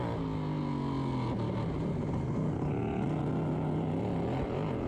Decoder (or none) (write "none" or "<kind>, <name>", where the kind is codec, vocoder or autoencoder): none